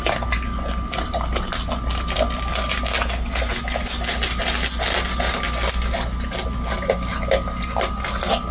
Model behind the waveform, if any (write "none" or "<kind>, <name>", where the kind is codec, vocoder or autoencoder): none